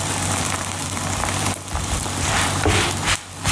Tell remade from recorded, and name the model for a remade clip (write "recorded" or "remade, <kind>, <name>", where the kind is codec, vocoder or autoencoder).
remade, vocoder, BigVGAN v2